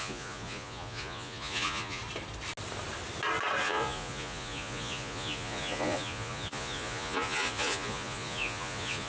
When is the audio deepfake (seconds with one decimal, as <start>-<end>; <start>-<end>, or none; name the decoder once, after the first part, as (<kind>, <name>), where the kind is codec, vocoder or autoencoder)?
0.0-2.0 (vocoder, Vocos); 3.6-9.1